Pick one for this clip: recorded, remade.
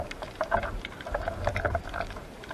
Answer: remade